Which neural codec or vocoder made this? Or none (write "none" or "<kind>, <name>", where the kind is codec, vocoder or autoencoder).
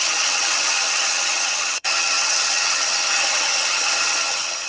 vocoder, HiFi-GAN